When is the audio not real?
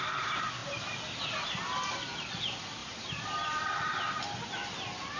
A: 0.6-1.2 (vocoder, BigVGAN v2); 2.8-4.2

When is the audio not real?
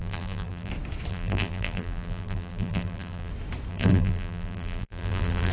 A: 0.0-0.7 (vocoder, BigVGAN v2); 1.1-3.3; 3.7-5.5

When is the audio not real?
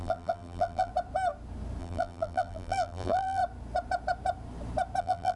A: 0.0-0.9 (vocoder, BigVGAN v2); 1.8-3.4; 5.0-5.4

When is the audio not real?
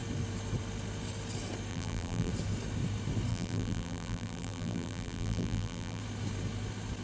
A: 1.7-2.3 (vocoder, BigVGAN v2); 3.3-6.0